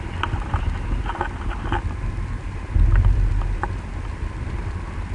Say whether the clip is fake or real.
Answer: real